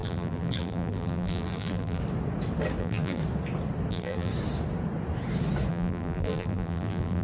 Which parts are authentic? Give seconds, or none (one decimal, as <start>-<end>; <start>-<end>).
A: 2.0-2.8; 3.2-3.9; 4.3-5.7